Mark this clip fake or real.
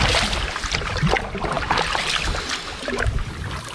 real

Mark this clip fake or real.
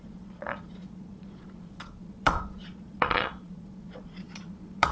fake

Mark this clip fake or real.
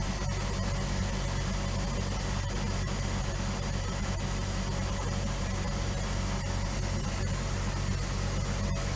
real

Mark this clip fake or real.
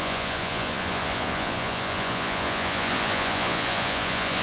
fake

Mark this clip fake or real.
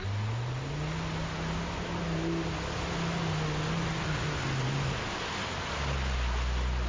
real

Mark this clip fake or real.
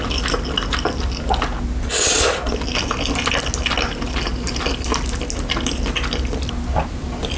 real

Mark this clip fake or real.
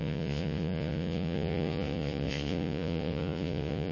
fake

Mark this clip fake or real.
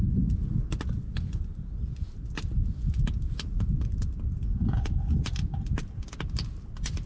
real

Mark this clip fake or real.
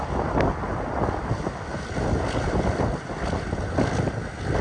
real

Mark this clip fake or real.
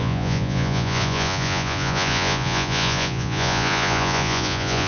fake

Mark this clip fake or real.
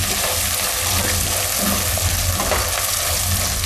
real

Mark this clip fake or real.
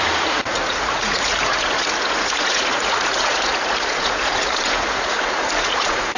fake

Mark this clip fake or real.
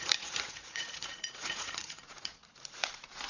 fake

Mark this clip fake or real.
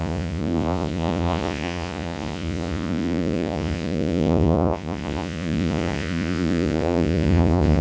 fake